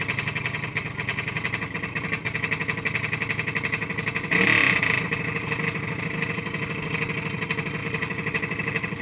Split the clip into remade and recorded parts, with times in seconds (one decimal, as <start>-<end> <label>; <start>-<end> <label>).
0.0-7.8 recorded; 7.8-9.0 remade